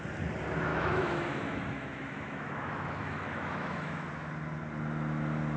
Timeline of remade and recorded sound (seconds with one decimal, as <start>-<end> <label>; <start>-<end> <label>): 0.0-0.7 recorded; 0.7-4.1 remade; 4.1-5.6 recorded

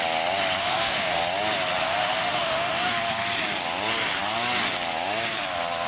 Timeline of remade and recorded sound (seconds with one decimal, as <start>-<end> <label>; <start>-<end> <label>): 0.0-0.6 recorded; 0.6-1.2 remade; 1.2-1.8 recorded; 1.8-2.9 remade; 2.9-5.9 recorded

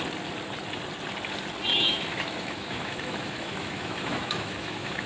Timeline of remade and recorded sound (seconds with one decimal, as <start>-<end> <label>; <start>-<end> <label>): 0.0-1.7 recorded; 1.7-5.1 remade

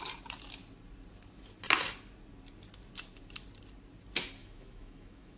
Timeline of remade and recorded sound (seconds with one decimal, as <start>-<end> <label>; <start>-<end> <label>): 0.0-4.4 recorded; 4.4-5.4 remade

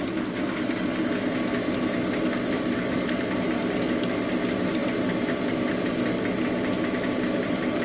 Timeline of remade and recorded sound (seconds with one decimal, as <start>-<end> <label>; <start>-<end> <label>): 0.0-7.8 recorded

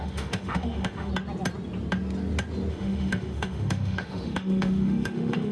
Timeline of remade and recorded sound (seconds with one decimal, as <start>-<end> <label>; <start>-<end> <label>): 0.0-1.1 remade; 1.1-2.7 recorded; 2.7-5.5 remade

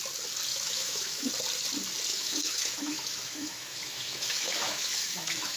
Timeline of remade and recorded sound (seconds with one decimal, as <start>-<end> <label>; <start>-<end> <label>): 0.0-0.5 recorded; 0.5-1.3 remade; 1.3-2.1 recorded; 2.1-5.6 remade

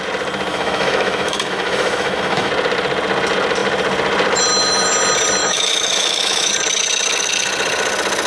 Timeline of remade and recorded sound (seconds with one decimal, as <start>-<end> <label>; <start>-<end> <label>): 0.0-0.5 recorded; 0.5-2.5 remade; 2.5-5.4 recorded; 5.4-6.5 remade; 6.5-8.3 recorded